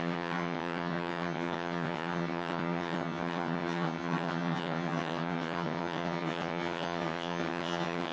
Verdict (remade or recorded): remade